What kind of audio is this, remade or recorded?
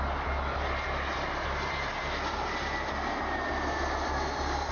recorded